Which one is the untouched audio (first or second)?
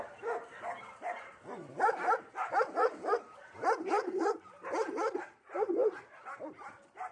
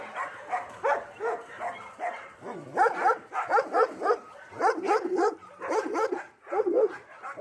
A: second